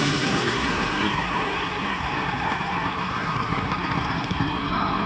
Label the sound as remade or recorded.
remade